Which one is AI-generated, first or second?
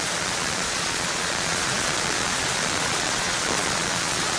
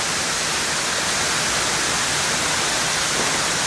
first